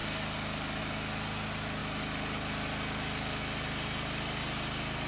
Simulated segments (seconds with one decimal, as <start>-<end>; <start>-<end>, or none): none